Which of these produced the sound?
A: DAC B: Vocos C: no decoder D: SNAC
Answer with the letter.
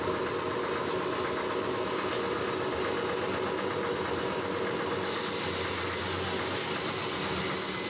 C